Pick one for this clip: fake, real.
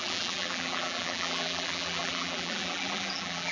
fake